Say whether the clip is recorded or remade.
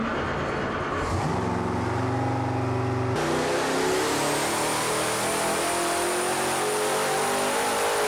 recorded